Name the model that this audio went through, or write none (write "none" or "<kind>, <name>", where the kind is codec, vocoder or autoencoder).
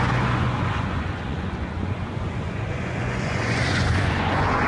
vocoder, Vocos